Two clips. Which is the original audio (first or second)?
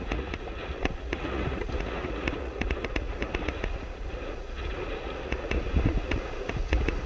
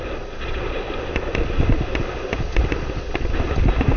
second